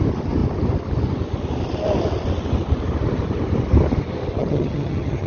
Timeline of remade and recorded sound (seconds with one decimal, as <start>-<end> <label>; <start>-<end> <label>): 0.0-4.4 recorded; 4.4-5.3 remade